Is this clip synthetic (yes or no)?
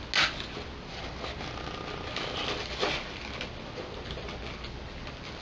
no